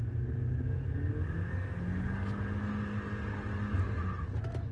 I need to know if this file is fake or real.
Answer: real